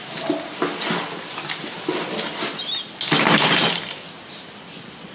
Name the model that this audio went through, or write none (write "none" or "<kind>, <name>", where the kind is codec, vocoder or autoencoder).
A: none